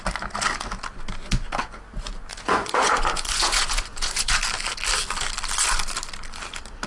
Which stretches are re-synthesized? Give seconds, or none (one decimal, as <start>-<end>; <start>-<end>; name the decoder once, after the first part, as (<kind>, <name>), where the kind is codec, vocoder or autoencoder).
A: 2.3-4.3 (vocoder, Vocos)